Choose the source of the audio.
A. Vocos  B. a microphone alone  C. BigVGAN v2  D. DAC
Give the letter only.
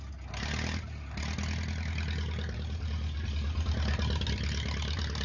B